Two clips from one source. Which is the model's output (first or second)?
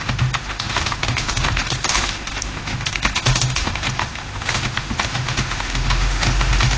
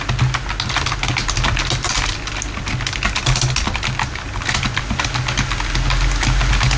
first